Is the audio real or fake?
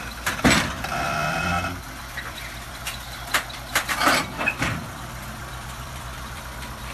fake